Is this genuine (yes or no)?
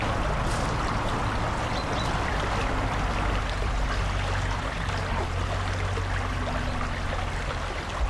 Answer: yes